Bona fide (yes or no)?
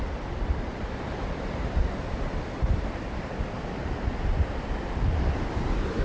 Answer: no